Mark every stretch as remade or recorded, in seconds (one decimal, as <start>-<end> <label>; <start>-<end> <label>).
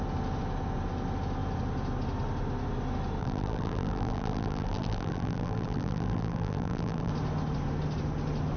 0.0-3.2 recorded; 3.2-7.1 remade; 7.1-8.6 recorded